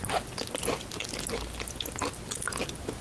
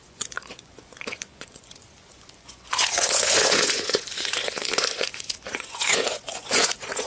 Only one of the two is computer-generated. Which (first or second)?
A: second